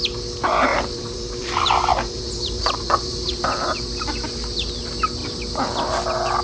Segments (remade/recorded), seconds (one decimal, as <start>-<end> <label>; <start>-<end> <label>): 0.0-0.7 recorded; 0.7-3.3 remade; 3.3-6.4 recorded